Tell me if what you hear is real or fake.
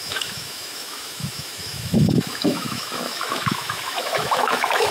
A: fake